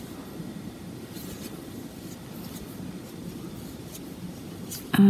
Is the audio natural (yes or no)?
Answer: yes